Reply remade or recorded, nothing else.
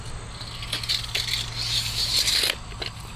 recorded